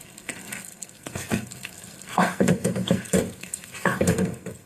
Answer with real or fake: fake